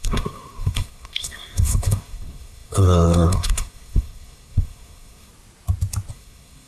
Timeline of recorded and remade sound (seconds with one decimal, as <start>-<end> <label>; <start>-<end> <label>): 0.0-5.3 remade; 5.3-6.1 recorded; 6.1-6.7 remade